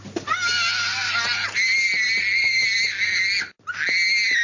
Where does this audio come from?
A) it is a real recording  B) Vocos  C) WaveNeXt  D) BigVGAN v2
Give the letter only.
A